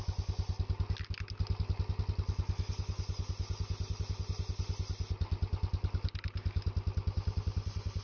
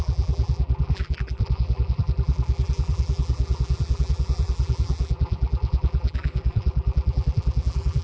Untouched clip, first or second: first